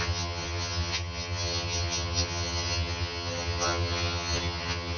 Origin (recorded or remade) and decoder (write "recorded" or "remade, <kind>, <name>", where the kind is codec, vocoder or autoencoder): remade, vocoder, HiFi-GAN